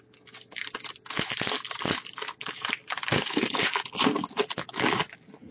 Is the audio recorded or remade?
recorded